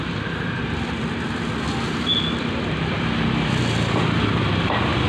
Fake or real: fake